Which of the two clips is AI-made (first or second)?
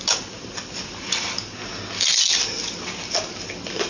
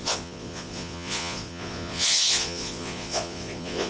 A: second